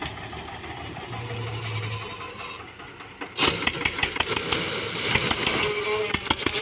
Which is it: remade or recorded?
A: recorded